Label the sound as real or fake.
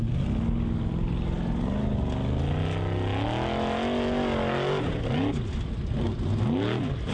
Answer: real